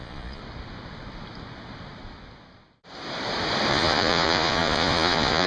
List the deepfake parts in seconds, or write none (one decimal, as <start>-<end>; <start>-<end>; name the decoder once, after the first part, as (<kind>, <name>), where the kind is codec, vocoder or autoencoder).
0.0-0.4 (vocoder, Vocos); 3.7-5.5